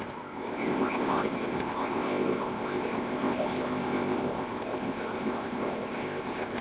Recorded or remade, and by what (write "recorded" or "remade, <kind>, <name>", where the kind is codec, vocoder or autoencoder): remade, codec, ZipCodec